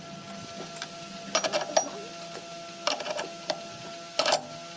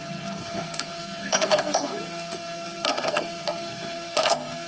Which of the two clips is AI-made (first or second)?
second